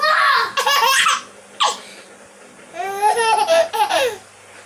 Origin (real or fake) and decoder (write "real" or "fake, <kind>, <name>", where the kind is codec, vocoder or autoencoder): real